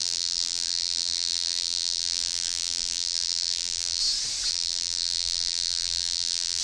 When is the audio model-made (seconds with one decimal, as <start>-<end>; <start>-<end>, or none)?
0.0-4.0; 4.5-6.6